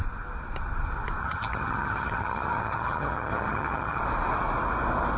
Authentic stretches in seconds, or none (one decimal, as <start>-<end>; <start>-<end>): 0.0-1.2; 4.0-5.2